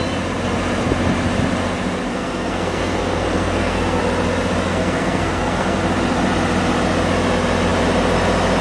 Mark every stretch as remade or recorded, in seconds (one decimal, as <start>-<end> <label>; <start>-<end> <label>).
0.0-2.1 recorded; 2.1-4.0 remade; 4.0-4.7 recorded; 4.7-5.8 remade; 5.8-8.6 recorded